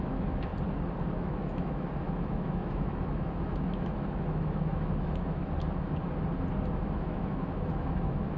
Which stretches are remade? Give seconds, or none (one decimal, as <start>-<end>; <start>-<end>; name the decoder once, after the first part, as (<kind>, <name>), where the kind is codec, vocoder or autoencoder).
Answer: 0.0-0.5 (autoencoder, DAC-VAE); 1.2-5.4; 6.7-8.4